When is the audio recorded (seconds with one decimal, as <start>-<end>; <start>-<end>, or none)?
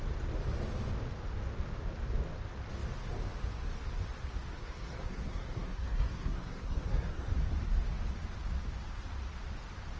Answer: 0.0-4.5; 7.4-10.0